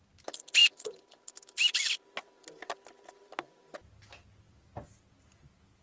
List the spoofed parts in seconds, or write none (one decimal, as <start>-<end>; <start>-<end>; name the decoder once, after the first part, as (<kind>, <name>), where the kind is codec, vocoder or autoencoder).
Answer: none